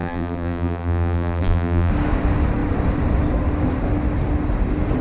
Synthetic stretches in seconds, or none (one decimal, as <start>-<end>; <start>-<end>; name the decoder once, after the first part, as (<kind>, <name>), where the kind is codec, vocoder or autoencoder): 0.0-1.9 (vocoder, BigVGAN v2)